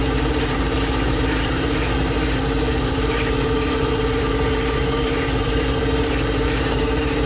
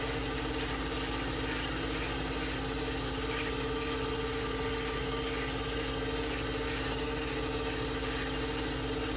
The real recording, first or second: second